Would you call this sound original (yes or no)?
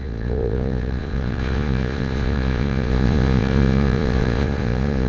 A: no